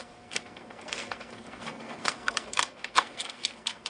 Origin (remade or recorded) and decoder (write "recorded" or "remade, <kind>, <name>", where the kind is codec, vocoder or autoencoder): remade, codec, SNAC